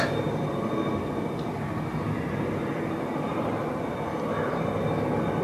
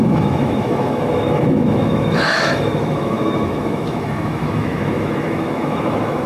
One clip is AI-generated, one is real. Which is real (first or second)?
first